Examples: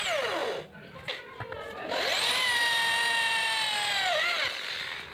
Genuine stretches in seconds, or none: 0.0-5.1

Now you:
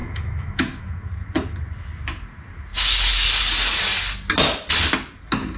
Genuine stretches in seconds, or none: 1.1-5.6

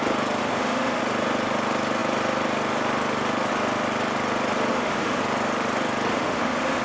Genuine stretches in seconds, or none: 0.0-0.4; 1.0-4.7; 5.2-6.1

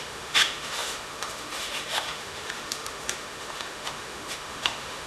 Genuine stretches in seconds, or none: none

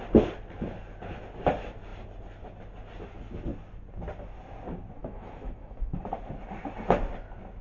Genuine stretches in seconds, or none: 0.0-5.0; 6.0-7.6